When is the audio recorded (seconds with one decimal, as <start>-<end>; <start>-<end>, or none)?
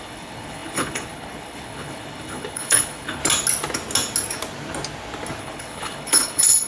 3.2-5.4